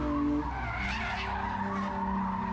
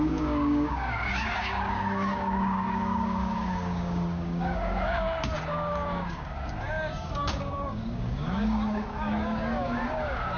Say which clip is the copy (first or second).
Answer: second